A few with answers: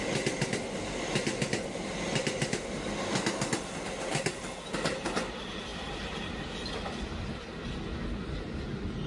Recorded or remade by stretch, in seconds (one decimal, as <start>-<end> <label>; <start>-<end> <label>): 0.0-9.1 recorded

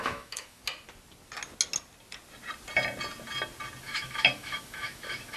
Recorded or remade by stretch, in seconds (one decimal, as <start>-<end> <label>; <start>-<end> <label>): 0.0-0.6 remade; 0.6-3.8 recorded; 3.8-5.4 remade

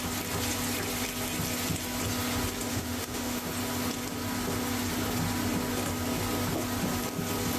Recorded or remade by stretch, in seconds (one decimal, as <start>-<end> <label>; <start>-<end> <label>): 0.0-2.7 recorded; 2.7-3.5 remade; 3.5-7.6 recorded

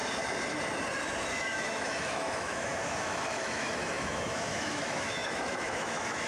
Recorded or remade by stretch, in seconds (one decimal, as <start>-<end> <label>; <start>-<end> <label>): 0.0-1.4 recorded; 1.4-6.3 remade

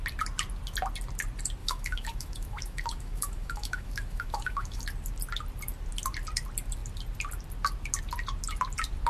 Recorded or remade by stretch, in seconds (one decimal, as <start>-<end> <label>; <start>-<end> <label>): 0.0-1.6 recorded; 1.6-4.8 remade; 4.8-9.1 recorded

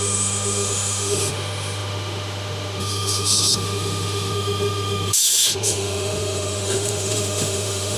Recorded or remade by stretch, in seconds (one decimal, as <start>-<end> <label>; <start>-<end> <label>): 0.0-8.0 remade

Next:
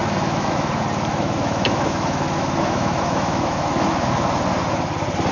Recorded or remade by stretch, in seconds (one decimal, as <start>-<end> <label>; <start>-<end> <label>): 0.0-0.7 remade; 0.7-1.1 recorded; 1.1-4.3 remade; 4.3-5.3 recorded